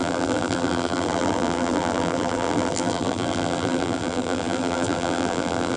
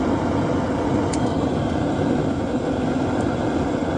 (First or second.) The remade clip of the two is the first